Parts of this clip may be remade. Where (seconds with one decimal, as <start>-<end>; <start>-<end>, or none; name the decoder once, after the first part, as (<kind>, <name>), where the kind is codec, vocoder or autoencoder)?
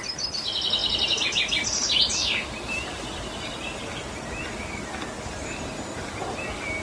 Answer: none